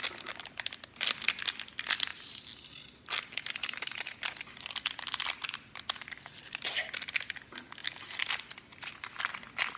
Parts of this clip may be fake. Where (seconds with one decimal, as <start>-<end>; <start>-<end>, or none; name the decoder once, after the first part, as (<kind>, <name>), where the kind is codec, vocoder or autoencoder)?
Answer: none